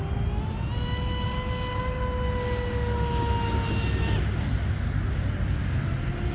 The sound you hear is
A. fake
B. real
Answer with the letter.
B